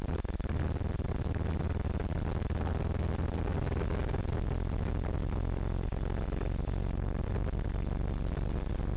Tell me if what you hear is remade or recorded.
recorded